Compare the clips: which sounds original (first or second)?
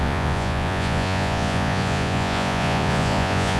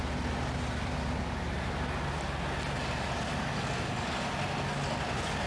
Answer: second